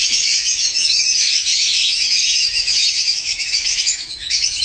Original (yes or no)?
no